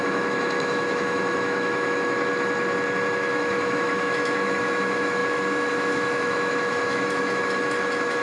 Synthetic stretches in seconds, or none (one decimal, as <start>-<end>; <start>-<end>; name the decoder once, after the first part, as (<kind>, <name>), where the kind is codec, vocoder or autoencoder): 0.0-2.3 (autoencoder, DAC-VAE); 3.1-8.2